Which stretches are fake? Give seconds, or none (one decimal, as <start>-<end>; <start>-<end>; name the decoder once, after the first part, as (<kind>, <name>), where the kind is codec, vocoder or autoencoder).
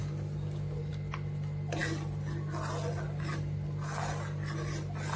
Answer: none